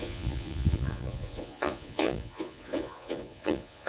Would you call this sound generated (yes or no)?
yes